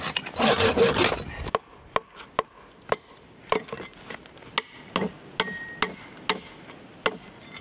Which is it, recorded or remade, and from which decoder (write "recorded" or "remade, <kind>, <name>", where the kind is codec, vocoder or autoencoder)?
recorded